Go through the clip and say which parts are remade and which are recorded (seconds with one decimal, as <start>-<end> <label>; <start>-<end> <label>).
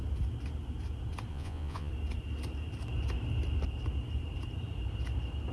0.0-1.3 recorded; 1.3-1.9 remade; 1.9-5.5 recorded